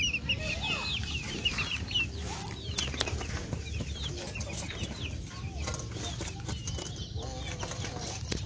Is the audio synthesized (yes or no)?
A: no